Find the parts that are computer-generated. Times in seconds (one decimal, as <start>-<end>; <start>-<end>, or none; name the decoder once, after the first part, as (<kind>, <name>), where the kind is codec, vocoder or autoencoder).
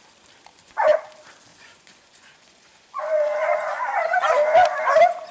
0.5-1.0 (vocoder, Vocos); 1.5-4.3